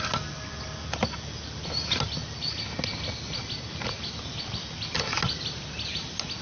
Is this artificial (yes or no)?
no